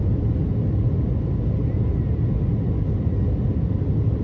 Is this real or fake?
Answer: real